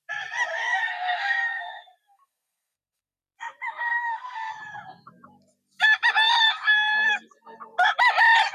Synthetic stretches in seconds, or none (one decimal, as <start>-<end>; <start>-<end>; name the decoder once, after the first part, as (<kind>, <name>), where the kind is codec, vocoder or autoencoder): 0.5-3.2 (codec, SNAC); 3.9-4.5